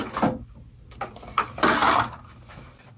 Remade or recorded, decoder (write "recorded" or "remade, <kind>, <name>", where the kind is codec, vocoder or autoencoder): recorded